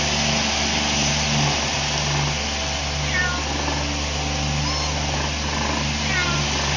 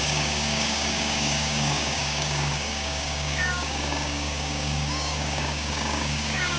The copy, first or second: second